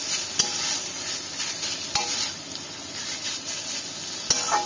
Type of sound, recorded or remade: recorded